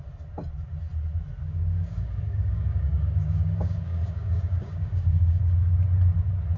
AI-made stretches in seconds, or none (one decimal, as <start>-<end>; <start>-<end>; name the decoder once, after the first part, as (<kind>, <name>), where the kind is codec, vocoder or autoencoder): 1.4-5.4 (codec, DAC)